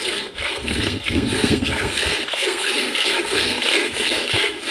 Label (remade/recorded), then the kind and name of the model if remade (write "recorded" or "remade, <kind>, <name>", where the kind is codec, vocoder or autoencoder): remade, codec, SNAC